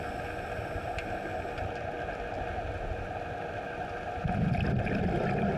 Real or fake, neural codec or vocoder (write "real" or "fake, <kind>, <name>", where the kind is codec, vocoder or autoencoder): real